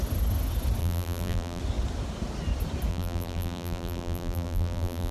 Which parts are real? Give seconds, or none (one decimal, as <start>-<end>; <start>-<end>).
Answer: 0.0-0.8; 1.6-2.9